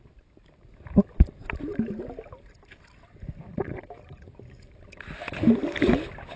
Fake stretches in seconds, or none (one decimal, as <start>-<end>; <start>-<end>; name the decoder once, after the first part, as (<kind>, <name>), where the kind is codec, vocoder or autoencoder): none